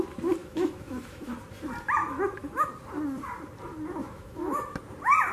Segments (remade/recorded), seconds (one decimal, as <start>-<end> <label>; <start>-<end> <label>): 0.0-0.4 recorded; 0.4-1.3 remade; 1.3-2.0 recorded; 2.0-2.7 remade; 2.7-4.0 recorded; 4.0-4.8 remade; 4.8-5.3 recorded